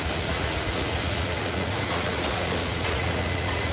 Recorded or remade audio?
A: remade